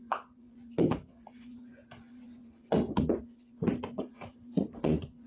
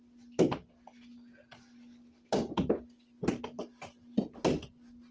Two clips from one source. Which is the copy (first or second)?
first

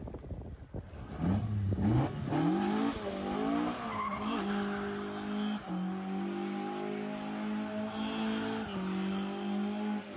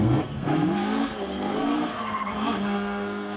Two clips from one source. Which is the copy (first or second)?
second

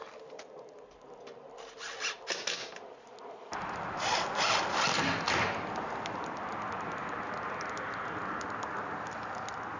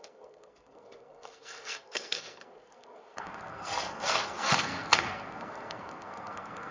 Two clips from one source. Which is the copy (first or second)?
second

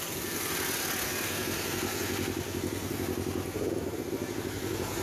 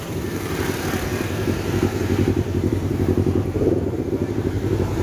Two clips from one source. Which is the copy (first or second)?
second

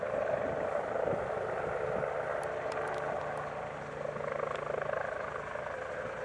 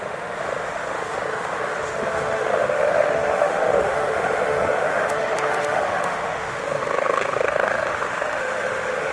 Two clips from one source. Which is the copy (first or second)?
second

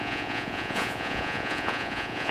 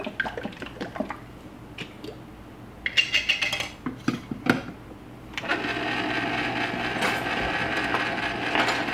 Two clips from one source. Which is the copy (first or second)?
first